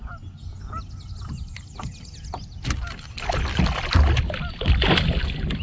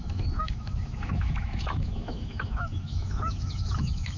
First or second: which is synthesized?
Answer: second